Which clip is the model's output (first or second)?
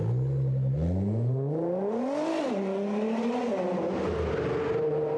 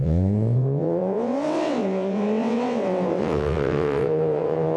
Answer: second